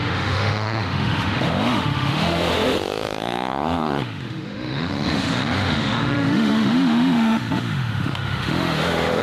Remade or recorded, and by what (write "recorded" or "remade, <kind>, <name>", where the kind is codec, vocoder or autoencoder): remade, autoencoder, DAC-VAE